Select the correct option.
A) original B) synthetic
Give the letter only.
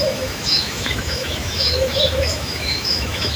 B